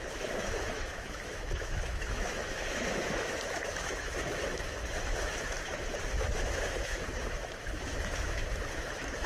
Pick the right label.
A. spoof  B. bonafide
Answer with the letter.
A